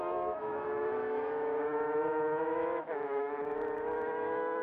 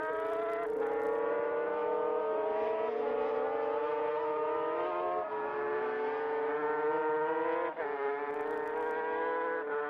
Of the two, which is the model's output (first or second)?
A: first